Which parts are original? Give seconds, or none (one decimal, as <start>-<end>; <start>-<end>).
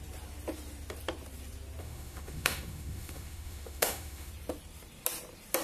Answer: 0.0-1.8; 4.3-5.6